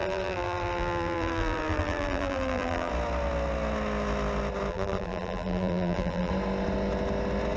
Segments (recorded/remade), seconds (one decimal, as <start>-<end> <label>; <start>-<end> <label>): 0.0-2.9 remade; 2.9-4.7 recorded; 4.7-6.3 remade; 6.3-7.6 recorded

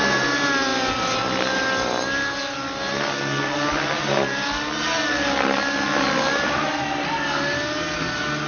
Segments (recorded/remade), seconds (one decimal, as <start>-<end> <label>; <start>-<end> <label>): 0.0-8.5 recorded

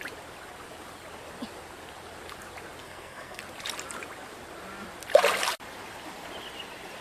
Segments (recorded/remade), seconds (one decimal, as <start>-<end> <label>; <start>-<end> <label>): 0.0-2.8 recorded; 2.8-3.4 remade; 3.4-7.0 recorded

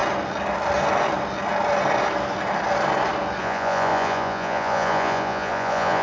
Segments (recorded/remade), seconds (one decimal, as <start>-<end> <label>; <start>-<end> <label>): 0.0-3.4 recorded; 3.4-6.0 remade

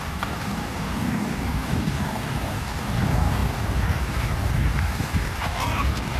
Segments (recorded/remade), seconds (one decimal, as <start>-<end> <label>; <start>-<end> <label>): 0.0-6.2 remade

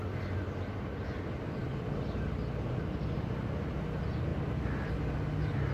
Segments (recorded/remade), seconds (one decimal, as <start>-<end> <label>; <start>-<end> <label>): 0.0-4.3 recorded; 4.3-4.9 remade; 4.9-5.7 recorded

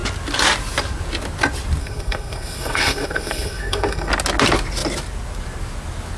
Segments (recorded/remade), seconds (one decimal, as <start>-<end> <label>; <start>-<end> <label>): 0.0-1.8 recorded; 1.8-4.1 remade; 4.1-6.2 recorded

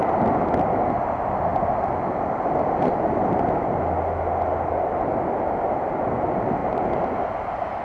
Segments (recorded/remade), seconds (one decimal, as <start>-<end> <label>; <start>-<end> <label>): 0.0-7.8 recorded